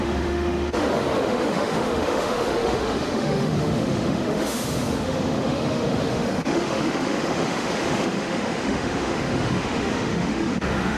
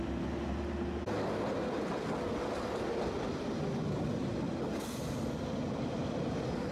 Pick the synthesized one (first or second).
first